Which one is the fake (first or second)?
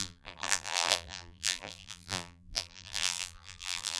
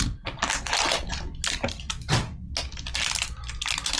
first